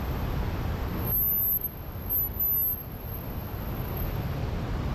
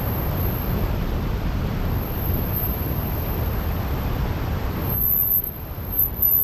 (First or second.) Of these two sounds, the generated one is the second